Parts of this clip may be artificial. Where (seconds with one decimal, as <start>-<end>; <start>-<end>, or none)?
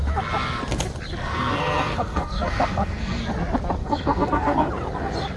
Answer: 1.2-3.2; 3.8-4.7